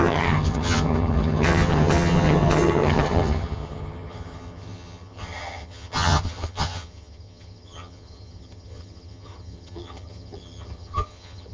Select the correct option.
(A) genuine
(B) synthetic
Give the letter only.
B